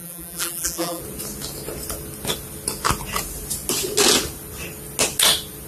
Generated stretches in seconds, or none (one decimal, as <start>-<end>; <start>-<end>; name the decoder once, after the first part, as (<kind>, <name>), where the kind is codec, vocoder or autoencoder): 0.0-1.0 (vocoder, BigVGAN v2)